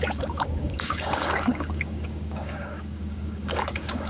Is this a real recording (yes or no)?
no